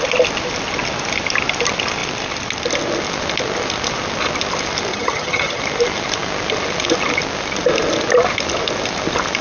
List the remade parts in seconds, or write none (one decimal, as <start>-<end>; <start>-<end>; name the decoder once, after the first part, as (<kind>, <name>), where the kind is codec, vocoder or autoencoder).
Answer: 4.9-5.6 (vocoder, HiFi-GAN)